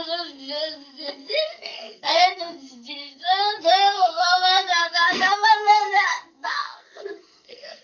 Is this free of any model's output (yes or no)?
no